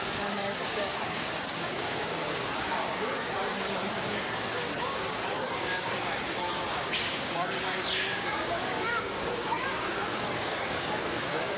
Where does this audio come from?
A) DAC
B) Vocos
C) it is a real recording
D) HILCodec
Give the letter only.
A